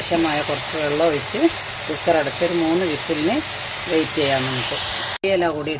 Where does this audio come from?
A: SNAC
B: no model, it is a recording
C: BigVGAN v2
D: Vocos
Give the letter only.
B